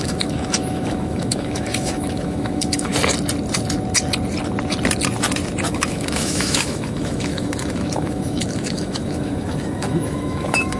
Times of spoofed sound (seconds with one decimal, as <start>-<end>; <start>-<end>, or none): 0.0-2.9; 5.7-10.8